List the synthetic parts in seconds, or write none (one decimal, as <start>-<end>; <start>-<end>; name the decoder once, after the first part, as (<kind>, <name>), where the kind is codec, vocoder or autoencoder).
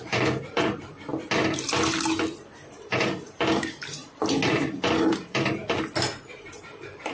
0.0-1.1 (vocoder, BigVGAN v2); 2.7-4.0; 5.1-5.6; 6.4-7.1